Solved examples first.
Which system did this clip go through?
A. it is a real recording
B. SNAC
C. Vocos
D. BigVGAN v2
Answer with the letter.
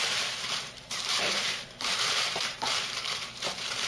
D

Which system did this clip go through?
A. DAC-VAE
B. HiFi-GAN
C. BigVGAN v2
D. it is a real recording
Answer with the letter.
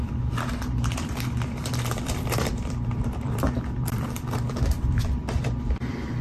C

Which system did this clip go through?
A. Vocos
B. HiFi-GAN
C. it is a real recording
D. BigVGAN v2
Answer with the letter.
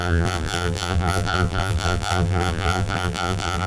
D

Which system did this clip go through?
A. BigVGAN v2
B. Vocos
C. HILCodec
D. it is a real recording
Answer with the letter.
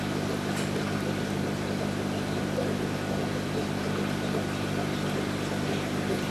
D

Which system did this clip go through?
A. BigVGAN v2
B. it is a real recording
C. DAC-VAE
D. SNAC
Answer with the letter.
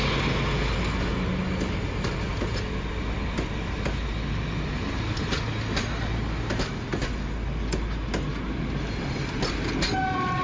B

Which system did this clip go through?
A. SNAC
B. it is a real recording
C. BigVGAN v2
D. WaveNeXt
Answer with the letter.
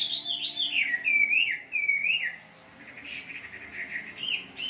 B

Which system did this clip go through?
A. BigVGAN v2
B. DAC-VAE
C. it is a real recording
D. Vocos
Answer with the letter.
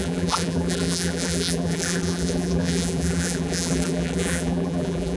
A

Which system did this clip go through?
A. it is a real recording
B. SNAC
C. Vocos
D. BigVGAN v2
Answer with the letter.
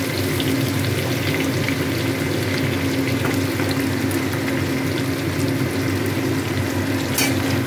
A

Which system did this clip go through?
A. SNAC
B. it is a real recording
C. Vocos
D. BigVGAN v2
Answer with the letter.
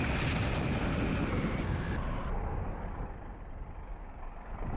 B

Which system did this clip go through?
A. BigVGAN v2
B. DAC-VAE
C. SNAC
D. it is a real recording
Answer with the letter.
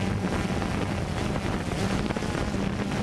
D